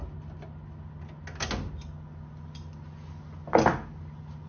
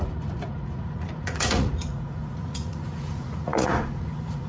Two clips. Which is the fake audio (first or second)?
second